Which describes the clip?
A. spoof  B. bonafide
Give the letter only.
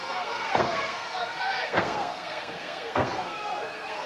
A